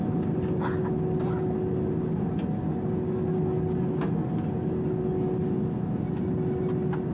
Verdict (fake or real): real